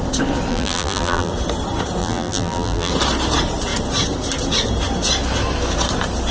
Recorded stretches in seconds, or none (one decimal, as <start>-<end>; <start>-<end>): 0.0-0.5; 1.3-2.0; 2.9-6.3

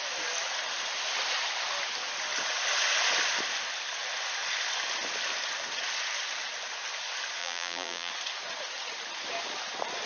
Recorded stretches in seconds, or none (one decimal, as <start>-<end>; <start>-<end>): 0.0-7.4; 8.1-10.1

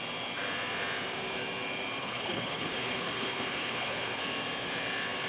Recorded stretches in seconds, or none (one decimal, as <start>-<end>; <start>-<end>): 0.0-2.0; 4.2-5.3

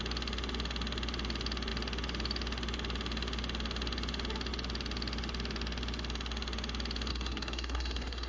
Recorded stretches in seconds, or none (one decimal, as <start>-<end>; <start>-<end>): 0.0-7.1

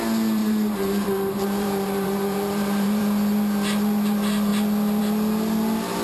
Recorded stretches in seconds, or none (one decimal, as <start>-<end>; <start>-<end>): 0.0-0.4; 3.0-6.0

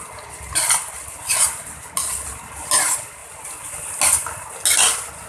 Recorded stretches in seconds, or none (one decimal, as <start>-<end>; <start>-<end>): 0.0-5.3